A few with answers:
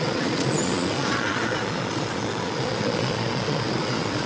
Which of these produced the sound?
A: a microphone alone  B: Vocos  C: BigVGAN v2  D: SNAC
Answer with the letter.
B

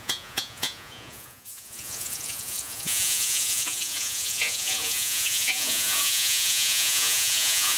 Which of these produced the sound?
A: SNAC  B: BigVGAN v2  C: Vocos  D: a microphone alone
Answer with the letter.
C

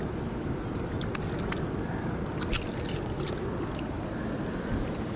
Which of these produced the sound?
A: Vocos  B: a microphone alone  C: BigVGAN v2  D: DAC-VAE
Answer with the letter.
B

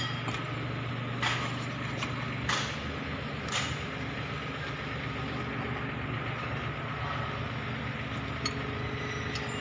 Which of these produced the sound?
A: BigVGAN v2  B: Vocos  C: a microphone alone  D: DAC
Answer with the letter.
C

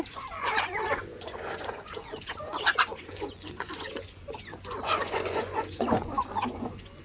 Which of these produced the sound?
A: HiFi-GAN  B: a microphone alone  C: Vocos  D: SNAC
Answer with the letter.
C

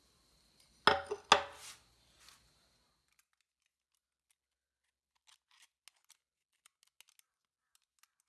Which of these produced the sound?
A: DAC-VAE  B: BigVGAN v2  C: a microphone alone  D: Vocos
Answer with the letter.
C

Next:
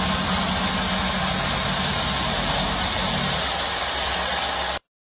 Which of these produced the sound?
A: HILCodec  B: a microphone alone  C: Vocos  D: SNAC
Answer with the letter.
B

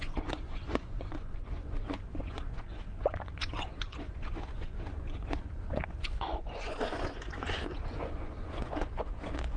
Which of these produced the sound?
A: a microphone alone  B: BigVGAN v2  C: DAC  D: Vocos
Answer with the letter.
D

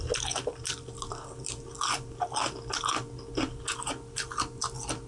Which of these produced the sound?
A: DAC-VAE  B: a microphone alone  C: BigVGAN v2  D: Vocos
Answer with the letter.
B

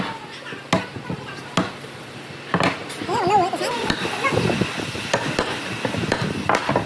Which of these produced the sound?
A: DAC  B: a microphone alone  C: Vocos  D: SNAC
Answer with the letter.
B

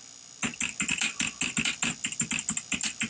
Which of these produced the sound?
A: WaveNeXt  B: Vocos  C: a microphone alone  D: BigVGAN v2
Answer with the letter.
C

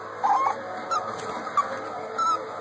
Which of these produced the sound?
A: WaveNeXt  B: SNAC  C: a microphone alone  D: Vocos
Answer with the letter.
C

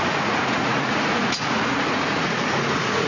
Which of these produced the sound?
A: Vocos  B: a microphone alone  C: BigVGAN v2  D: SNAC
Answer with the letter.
A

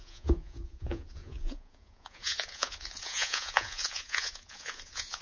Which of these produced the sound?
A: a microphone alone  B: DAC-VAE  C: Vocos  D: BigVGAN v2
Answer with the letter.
C